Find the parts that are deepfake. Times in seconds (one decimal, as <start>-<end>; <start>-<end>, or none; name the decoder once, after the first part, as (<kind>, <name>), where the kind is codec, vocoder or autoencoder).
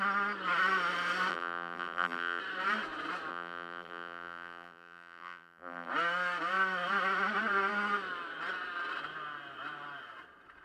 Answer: 1.3-2.4 (vocoder, BigVGAN v2); 3.3-5.9